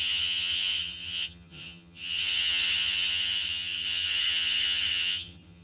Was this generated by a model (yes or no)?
yes